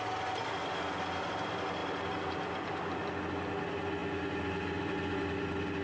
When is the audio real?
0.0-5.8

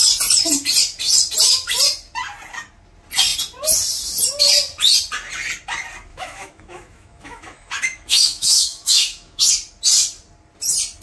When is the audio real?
0.0-6.1; 9.5-11.0

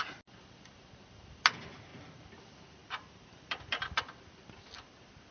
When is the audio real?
0.0-2.8; 4.0-5.3

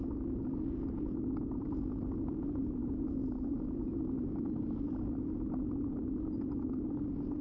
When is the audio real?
0.0-7.4

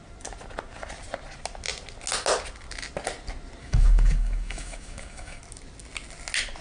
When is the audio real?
0.0-3.6; 5.4-6.6

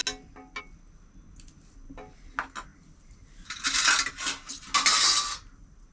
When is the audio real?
0.0-5.9

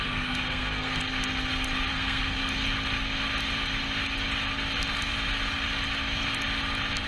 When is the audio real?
1.0-1.9; 2.4-7.1

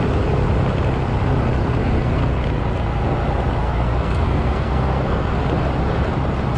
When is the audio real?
0.0-1.8; 2.4-3.6; 5.4-6.6